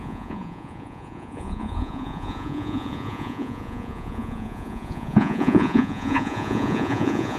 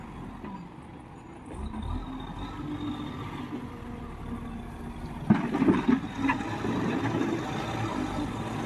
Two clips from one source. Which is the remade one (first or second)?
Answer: first